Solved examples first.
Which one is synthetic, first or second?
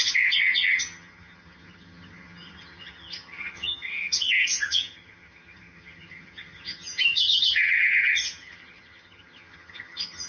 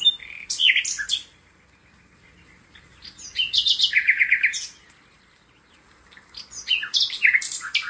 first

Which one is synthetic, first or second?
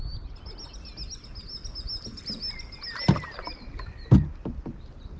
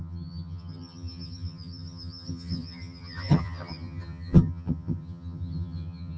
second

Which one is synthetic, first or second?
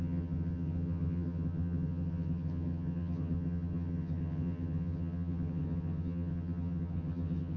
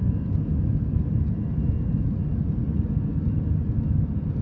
first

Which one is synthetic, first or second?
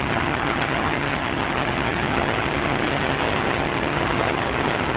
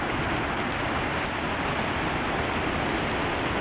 first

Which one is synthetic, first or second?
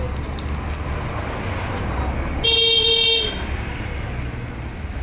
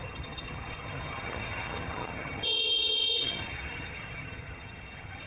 second